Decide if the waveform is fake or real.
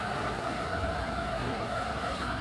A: fake